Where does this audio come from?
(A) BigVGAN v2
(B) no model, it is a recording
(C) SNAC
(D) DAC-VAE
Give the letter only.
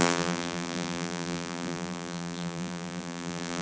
A